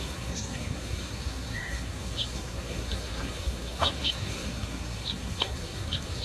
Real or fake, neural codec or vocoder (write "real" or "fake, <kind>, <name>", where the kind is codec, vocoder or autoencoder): fake, codec, SNAC